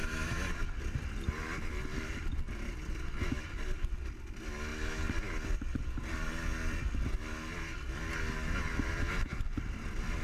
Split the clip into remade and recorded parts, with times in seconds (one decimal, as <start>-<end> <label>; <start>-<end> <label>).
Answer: 0.0-0.5 remade; 0.5-10.2 recorded